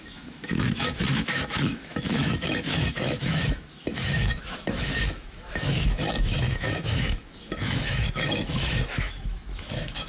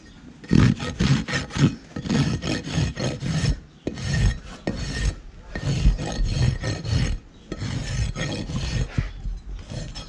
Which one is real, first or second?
second